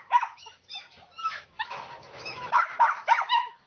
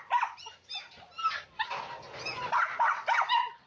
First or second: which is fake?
first